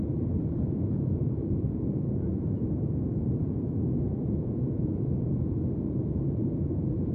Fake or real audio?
fake